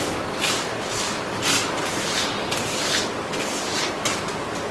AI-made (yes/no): no